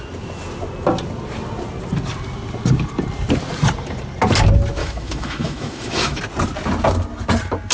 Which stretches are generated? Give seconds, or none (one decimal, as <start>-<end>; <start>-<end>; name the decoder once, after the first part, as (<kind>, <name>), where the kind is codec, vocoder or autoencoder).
4.8-6.2 (autoencoder, DAC-VAE)